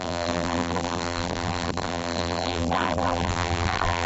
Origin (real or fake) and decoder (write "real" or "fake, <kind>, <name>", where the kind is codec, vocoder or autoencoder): fake, vocoder, BigVGAN v2